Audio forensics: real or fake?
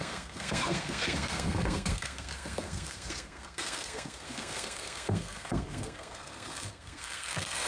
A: fake